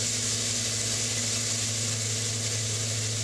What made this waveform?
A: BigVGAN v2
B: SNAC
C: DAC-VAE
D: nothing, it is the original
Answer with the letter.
D